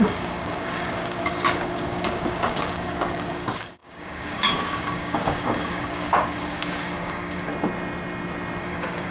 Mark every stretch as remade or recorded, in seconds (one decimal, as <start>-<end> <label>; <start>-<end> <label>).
0.0-7.5 remade; 7.5-8.6 recorded; 8.6-9.1 remade